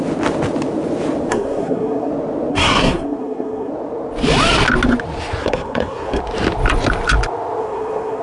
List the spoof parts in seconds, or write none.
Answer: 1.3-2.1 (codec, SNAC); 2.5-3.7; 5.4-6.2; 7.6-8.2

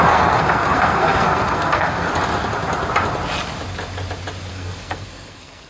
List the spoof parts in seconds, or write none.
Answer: 0.0-2.1 (codec, SNAC); 4.5-5.7

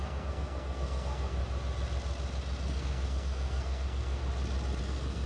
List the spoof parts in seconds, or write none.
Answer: 0.0-1.4 (codec, SNAC); 2.7-4.2; 4.8-5.3

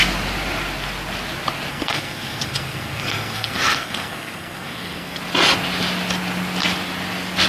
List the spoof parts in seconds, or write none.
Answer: 1.7-5.2 (codec, SNAC)